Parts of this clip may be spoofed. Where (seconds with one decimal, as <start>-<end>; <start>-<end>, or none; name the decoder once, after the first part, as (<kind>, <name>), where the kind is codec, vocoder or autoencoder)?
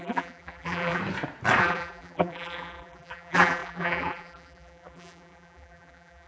0.0-1.0 (vocoder, BigVGAN v2); 1.6-6.3